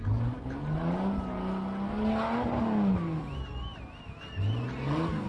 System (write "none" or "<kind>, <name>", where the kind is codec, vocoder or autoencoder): none